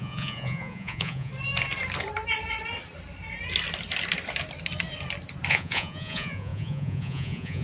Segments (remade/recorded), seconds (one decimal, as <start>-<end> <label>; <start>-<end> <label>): 0.0-1.3 remade; 1.3-5.5 recorded; 5.5-7.6 remade